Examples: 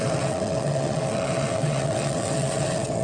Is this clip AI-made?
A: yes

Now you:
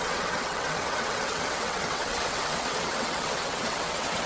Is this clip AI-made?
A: yes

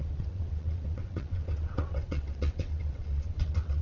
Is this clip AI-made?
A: yes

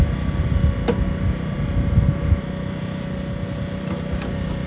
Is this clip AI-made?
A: no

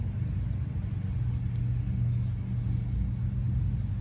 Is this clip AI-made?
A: no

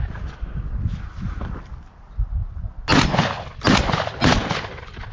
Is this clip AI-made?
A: no